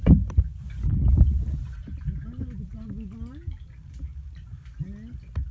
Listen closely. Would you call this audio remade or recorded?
recorded